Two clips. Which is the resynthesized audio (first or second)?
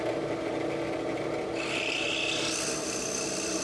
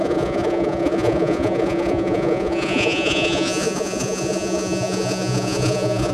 second